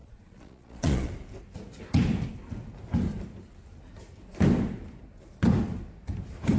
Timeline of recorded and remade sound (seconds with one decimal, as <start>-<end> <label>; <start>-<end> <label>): 0.0-1.1 remade; 1.1-6.6 recorded